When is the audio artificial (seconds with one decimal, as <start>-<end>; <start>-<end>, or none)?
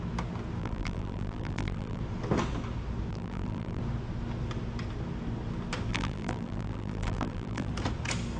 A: 0.6-2.0; 3.1-3.8; 5.9-7.7